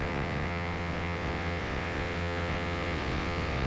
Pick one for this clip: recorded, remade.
remade